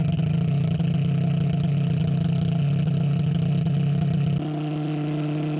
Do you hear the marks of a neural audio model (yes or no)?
no